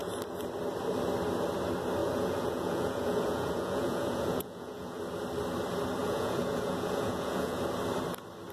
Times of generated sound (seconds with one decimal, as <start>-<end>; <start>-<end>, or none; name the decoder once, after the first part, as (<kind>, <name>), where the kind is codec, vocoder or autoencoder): 2.0-5.0 (vocoder, Vocos); 6.0-7.6